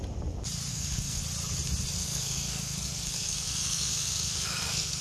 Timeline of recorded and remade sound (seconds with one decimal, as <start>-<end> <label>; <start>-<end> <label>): 0.0-0.7 recorded; 0.7-1.2 remade; 1.2-2.0 recorded; 2.0-5.0 remade